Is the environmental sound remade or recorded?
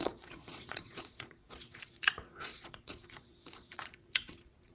remade